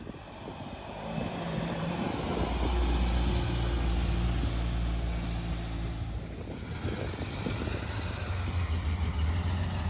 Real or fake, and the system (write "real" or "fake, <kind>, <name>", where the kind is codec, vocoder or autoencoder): real